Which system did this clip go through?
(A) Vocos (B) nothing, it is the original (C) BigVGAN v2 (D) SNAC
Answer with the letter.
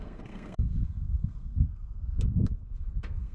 D